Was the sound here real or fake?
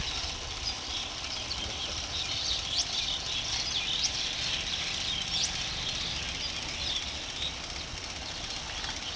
real